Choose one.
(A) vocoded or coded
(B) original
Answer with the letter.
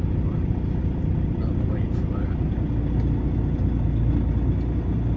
B